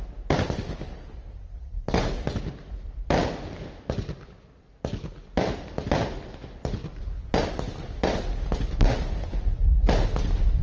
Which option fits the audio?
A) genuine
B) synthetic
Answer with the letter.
A